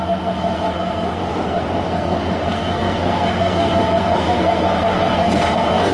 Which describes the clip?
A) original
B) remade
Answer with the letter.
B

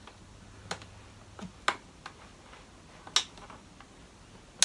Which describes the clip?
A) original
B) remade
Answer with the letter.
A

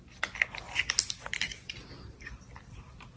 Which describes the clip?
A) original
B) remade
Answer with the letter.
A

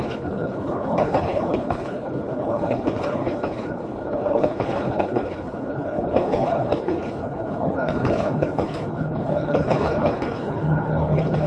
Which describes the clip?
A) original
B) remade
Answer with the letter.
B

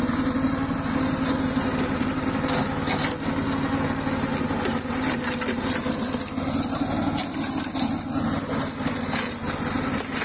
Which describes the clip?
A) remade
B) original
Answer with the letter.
B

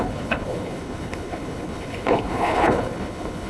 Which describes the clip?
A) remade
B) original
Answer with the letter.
A